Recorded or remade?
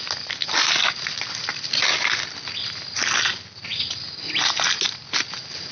recorded